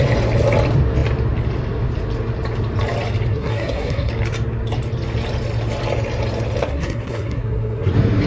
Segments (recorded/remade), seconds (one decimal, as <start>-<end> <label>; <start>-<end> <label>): 0.0-3.3 recorded; 3.3-4.1 remade; 4.1-6.6 recorded; 6.6-7.9 remade; 7.9-8.3 recorded

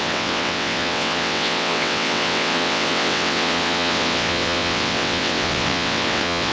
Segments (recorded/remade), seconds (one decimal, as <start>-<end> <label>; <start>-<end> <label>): 0.0-6.5 remade

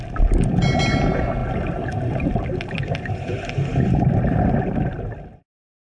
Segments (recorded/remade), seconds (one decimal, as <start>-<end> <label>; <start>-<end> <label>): 0.0-6.0 recorded